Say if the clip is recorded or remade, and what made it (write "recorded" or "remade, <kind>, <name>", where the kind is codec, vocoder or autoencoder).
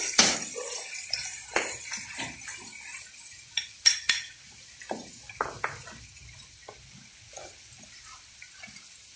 recorded